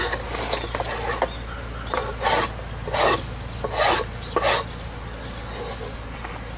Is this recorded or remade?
recorded